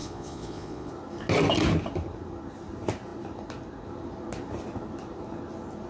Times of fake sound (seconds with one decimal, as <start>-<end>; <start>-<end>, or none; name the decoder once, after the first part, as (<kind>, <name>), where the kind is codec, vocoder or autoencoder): 0.0-0.9 (vocoder, Vocos)